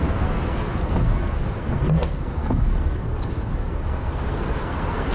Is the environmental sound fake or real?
fake